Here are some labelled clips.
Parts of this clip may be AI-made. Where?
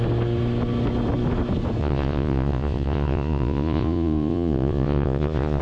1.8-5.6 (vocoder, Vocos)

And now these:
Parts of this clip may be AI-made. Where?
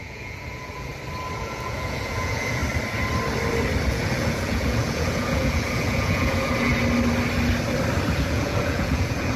0.0-0.9 (vocoder, Vocos); 1.4-2.6; 3.9-6.7; 8.1-9.4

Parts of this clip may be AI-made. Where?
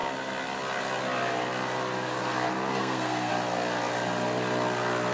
2.8-3.3 (codec, SNAC)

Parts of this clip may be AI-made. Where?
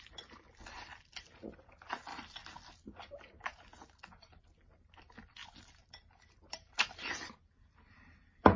none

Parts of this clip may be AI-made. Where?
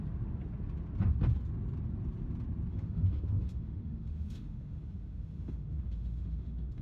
2.7-6.8 (autoencoder, DAC-VAE)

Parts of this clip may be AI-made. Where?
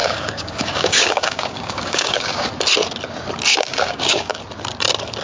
0.0-2.5 (codec, DAC); 3.5-4.4